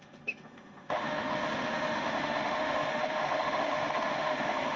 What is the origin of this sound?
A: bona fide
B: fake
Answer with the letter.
B